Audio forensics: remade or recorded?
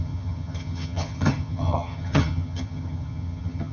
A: remade